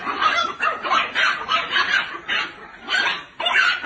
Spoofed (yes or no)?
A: no